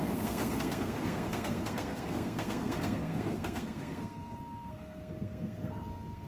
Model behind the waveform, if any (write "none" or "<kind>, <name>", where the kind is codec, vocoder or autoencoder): codec, SNAC